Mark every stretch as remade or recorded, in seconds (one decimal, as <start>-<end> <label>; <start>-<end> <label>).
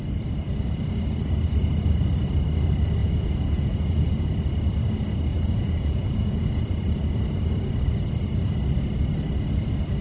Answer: 0.0-3.0 recorded; 3.0-4.3 remade; 4.3-5.3 recorded; 5.3-6.6 remade; 6.6-10.0 recorded